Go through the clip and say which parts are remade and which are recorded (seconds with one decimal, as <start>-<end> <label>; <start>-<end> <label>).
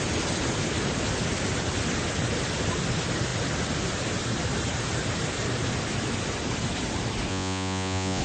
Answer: 0.0-7.3 recorded; 7.3-8.2 remade